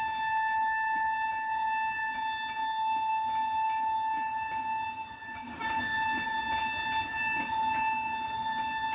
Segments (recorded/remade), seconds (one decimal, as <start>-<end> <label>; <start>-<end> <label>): 0.0-8.9 recorded